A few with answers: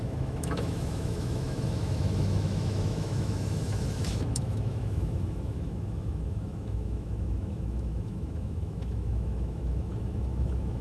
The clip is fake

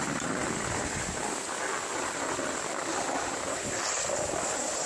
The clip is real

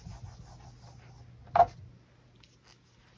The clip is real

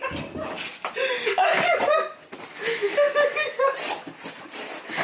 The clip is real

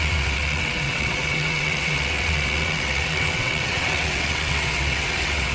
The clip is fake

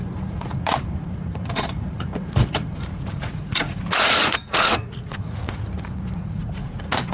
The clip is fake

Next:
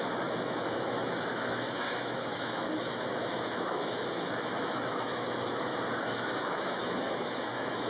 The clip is fake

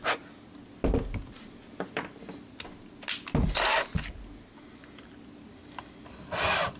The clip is real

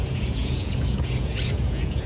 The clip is fake